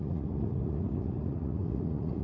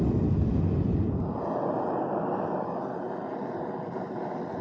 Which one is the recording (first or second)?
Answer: second